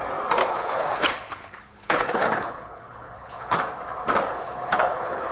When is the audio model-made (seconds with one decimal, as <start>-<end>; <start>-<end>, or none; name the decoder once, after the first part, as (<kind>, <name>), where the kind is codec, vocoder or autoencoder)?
0.4-3.6 (codec, HILCodec); 4.3-5.3